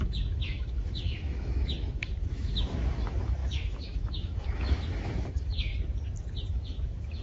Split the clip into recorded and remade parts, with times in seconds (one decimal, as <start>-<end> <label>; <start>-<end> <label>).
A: 0.0-5.7 remade; 5.7-6.5 recorded; 6.5-7.2 remade